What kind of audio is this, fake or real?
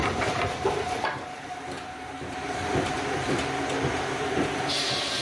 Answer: fake